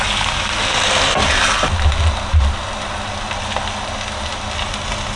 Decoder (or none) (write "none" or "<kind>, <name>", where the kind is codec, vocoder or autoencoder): none